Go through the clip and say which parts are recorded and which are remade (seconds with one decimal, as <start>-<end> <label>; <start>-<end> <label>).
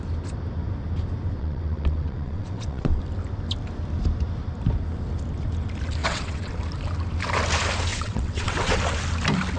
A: 0.0-1.4 recorded; 1.4-3.0 remade; 3.0-6.0 recorded; 6.0-6.5 remade; 6.5-7.9 recorded; 7.9-8.8 remade; 8.8-9.6 recorded